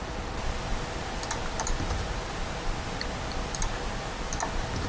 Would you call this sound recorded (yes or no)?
yes